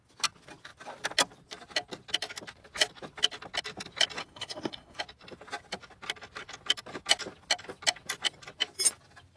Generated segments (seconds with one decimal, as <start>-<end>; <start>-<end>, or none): 4.2-5.0